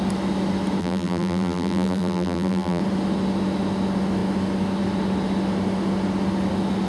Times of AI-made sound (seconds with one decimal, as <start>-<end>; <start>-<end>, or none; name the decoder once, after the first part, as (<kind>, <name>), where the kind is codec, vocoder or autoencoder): 0.8-2.8 (vocoder, BigVGAN v2)